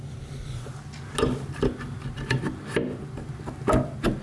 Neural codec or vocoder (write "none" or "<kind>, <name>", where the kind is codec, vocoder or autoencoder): none